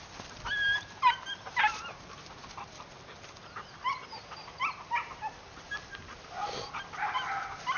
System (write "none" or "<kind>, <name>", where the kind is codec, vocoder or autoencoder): none